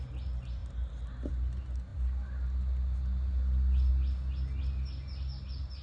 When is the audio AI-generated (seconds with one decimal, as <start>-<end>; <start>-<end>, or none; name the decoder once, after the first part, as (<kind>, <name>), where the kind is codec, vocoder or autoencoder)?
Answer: none